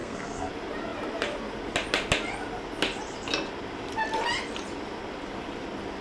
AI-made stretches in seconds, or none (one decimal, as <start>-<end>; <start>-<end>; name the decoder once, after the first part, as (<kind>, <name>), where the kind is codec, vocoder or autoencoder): 0.0-0.5 (codec, SNAC)